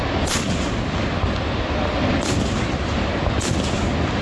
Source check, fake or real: real